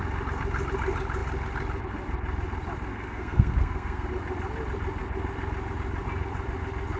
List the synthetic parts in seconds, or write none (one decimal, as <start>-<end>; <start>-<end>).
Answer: 2.9-4.1